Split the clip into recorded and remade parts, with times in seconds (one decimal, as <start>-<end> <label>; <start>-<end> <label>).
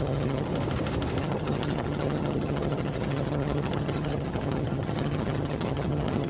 0.0-0.5 remade; 0.5-1.2 recorded; 1.2-6.3 remade